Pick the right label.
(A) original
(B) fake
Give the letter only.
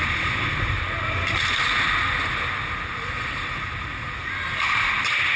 A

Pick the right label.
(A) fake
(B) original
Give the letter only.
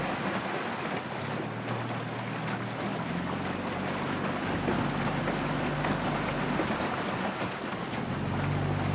B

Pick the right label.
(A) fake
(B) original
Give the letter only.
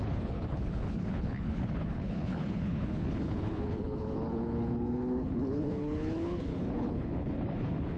A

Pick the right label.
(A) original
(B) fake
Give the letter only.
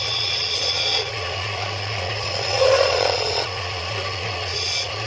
B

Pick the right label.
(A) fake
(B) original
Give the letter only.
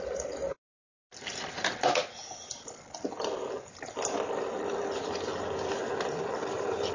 B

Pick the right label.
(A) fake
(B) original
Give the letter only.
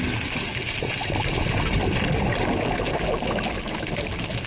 B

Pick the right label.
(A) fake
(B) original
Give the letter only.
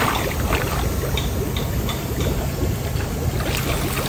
B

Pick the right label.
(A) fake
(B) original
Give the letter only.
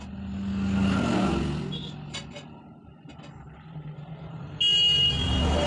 B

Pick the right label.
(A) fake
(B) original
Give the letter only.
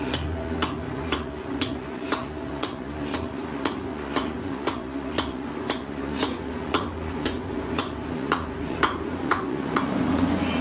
A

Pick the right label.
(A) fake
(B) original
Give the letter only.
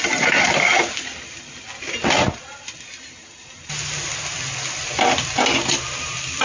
B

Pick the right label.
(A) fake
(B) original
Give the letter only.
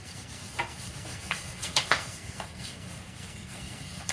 A